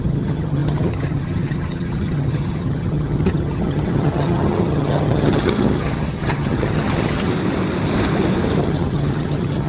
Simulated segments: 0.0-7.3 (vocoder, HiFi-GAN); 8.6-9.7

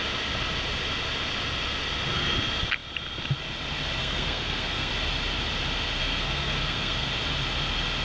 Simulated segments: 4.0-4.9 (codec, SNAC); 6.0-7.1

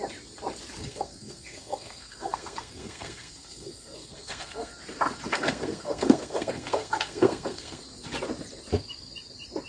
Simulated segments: 0.8-4.7 (codec, SNAC); 5.3-7.8

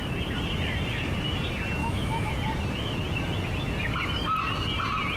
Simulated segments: 1.8-2.3 (autoencoder, DAC-VAE)

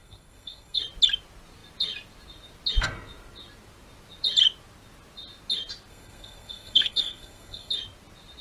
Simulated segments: 0.0-0.8 (codec, SNAC); 5.9-7.7

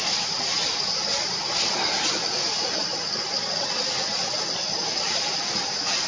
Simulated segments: none

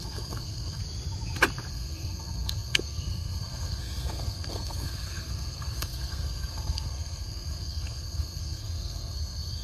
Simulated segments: 0.0-0.8 (codec, SNAC); 1.7-9.6